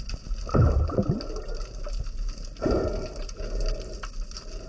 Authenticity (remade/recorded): recorded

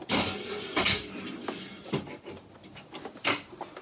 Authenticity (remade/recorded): recorded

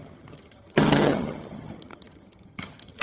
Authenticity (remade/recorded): remade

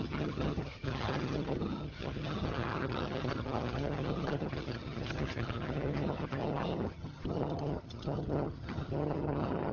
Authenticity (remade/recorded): remade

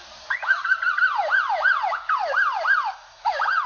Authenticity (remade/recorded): recorded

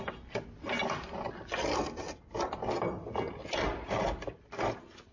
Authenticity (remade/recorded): recorded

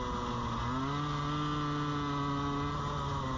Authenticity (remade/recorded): recorded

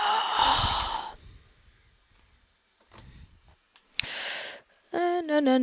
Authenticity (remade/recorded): recorded